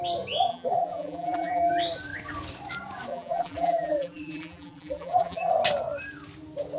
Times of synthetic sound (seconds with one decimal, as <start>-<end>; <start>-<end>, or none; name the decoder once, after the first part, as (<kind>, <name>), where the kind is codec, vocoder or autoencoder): 0.5-1.7 (vocoder, BigVGAN v2); 3.1-5.5